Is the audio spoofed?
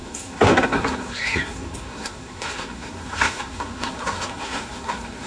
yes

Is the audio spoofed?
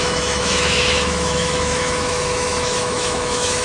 yes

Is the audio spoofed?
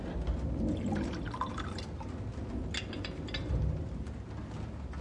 no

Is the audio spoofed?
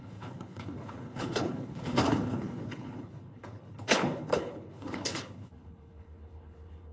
yes